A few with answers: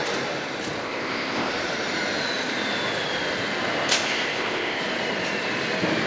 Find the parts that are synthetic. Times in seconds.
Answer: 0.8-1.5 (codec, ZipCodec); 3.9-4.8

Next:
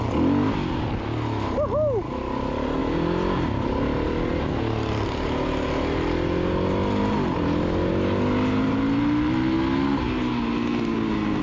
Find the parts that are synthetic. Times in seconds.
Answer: none

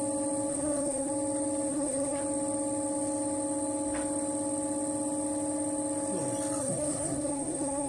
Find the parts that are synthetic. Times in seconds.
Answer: 0.5-1.1 (codec, SNAC); 1.7-2.2; 6.6-7.9

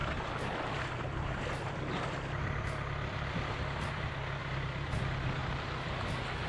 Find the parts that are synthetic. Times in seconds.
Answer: 0.0-5.4 (vocoder, BigVGAN v2)

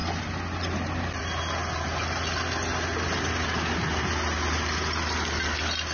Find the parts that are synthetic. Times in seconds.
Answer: none

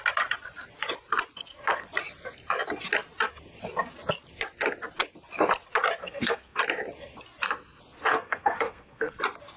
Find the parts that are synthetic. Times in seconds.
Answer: 6.0-6.6 (codec, SNAC); 8.1-9.2

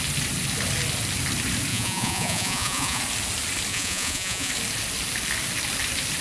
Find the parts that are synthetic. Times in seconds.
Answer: 1.7-3.0 (vocoder, Vocos); 3.7-4.5